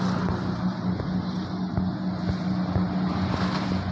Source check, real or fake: real